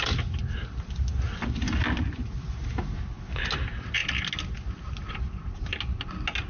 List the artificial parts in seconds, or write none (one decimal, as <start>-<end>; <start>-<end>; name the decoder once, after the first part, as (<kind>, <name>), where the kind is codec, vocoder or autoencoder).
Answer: none